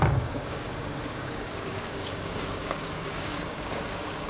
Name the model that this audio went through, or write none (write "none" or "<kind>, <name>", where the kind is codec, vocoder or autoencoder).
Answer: codec, DAC